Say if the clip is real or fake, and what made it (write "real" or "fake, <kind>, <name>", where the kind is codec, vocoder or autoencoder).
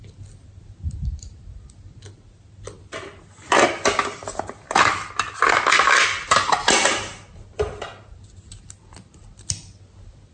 real